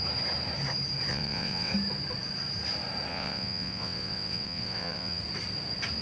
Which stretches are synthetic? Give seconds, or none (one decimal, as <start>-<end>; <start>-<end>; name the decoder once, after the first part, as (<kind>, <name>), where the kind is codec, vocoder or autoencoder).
1.1-1.7 (vocoder, WaveNeXt); 3.1-5.2